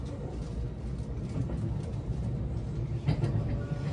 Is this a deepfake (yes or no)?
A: no